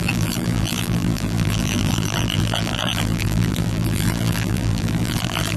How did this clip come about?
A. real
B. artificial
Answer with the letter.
B